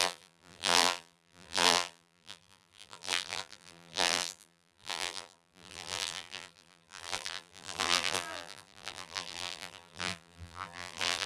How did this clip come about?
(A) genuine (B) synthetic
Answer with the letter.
B